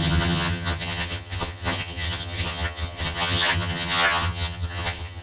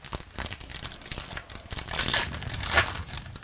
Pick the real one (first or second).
second